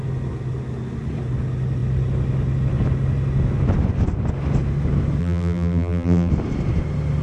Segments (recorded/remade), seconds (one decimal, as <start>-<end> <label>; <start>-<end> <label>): 0.0-5.2 recorded; 5.2-6.3 remade; 6.3-7.2 recorded